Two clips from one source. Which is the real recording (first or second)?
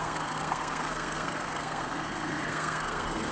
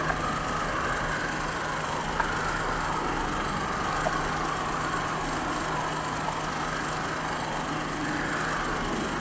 second